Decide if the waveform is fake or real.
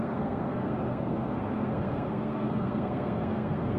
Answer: fake